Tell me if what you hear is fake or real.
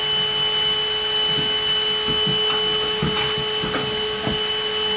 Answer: real